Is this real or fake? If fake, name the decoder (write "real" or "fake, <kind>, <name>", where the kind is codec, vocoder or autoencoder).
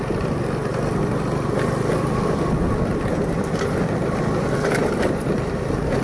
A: real